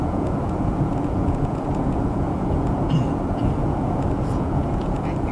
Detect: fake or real fake